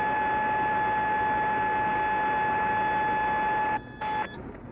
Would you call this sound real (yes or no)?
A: yes